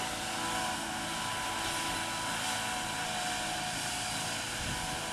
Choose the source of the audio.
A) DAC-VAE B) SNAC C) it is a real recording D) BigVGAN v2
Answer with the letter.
C